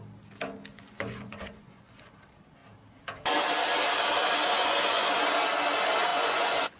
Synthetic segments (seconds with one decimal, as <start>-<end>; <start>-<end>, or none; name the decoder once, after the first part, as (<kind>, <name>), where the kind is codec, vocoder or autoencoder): 0.7-2.1 (vocoder, Vocos); 4.4-5.1; 6.1-6.8